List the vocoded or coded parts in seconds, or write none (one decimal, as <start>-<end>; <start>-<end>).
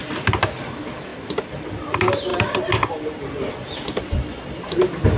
2.3-4.3